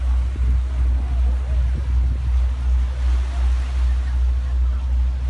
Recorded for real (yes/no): yes